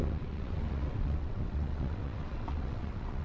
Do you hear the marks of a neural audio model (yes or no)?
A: yes